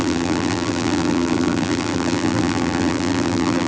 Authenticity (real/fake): fake